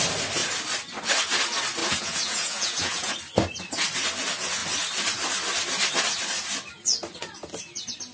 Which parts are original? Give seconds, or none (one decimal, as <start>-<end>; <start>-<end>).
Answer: 0.0-1.8; 3.1-8.1